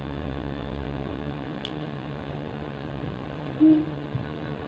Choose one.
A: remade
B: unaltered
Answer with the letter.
A